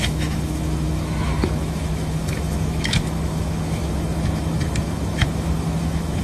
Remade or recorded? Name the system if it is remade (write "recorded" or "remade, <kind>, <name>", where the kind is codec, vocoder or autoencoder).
remade, autoencoder, DAC-VAE